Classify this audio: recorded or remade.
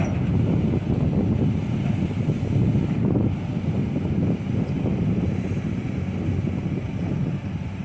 recorded